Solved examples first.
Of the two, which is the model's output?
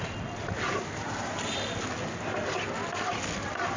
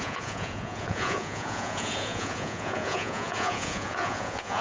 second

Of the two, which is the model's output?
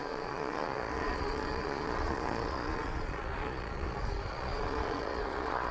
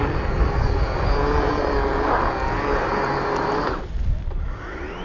first